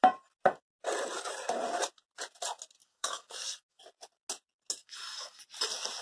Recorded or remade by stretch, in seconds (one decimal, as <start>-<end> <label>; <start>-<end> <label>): 0.0-2.8 recorded; 2.8-3.8 remade; 3.8-4.8 recorded; 4.8-5.4 remade; 5.4-6.0 recorded